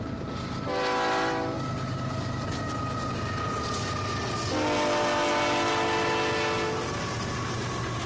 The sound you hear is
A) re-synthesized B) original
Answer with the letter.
B